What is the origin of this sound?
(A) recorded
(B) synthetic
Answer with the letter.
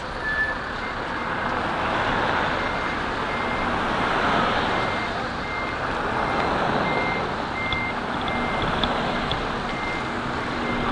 A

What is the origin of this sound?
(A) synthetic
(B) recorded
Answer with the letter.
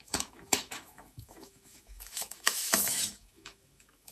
A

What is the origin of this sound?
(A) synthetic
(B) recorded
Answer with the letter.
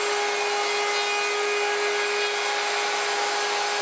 B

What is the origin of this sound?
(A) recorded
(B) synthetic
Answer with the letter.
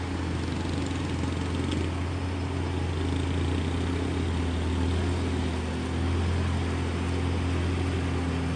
A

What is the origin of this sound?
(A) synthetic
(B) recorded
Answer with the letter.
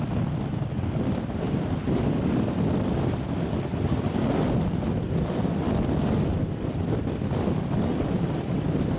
B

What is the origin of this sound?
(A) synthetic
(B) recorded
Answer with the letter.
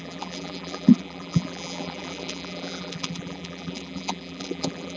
A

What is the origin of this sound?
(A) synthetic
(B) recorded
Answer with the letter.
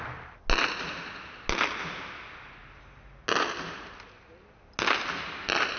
B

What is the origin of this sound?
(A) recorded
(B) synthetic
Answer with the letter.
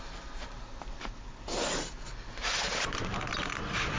A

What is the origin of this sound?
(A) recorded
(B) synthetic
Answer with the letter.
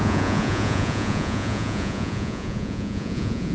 B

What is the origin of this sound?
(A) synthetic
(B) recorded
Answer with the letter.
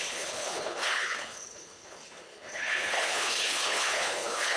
A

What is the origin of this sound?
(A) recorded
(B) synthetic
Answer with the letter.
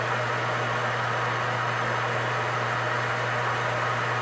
A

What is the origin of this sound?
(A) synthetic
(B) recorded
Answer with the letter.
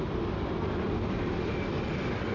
B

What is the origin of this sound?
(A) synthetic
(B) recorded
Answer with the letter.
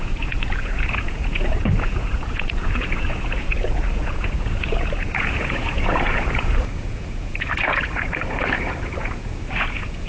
A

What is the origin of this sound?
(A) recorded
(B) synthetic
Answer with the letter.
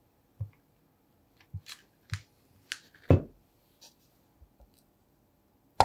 A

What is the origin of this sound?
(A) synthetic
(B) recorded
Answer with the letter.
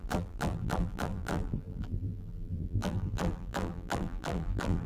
A